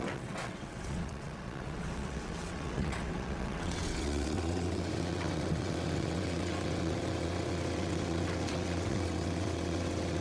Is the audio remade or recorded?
remade